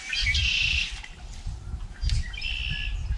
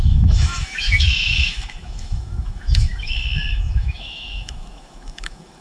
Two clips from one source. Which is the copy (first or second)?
second